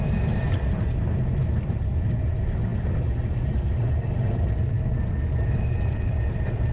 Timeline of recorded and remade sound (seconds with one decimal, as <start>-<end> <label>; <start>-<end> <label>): 0.0-5.3 recorded; 5.3-6.1 remade; 6.1-6.7 recorded